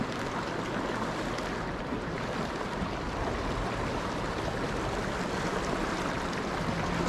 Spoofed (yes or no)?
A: no